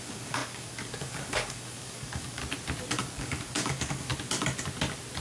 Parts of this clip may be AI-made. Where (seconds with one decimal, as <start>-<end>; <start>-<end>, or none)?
0.0-2.4; 3.0-4.1